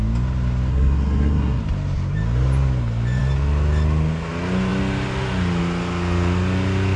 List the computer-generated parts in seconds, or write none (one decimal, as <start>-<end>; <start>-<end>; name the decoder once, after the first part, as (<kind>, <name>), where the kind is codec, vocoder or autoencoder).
0.7-1.6 (codec, SNAC)